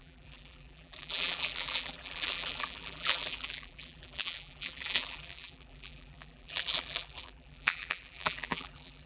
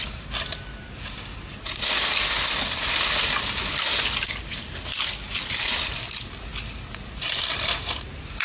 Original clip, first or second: second